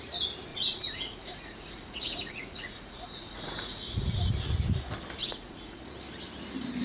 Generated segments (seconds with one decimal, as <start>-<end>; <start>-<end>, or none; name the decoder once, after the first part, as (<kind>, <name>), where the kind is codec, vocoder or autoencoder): 0.5-4.3 (vocoder, Vocos); 5.2-5.8